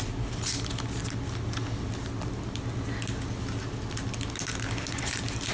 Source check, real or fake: real